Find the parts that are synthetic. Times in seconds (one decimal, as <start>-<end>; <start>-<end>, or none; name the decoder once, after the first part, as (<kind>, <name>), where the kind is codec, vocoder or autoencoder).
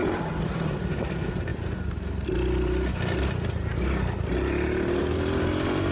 0.0-1.5 (vocoder, BigVGAN v2); 5.0-5.9